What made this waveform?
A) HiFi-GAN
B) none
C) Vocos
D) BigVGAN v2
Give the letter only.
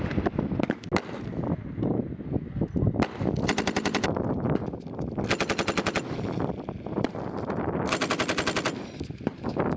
B